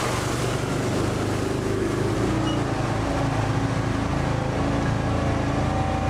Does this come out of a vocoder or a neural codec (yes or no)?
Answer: no